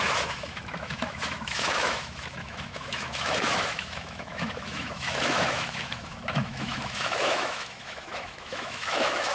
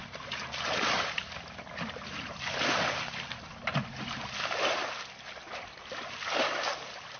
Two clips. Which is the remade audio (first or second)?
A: first